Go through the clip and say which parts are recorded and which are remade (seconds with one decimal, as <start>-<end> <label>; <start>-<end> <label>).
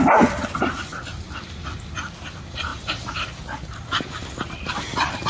0.0-0.4 recorded; 0.4-1.0 remade; 1.0-5.3 recorded